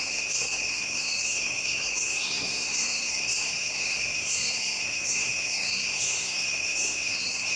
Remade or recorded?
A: remade